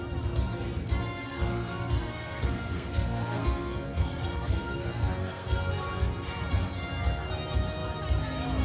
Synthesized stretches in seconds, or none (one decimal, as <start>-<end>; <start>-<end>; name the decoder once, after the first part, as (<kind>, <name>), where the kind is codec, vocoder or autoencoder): 1.0-5.7 (codec, SNAC)